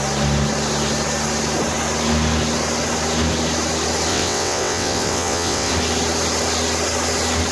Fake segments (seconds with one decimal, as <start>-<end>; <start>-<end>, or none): 4.1-5.7